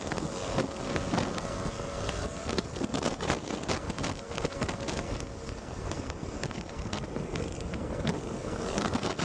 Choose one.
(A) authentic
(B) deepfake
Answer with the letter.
B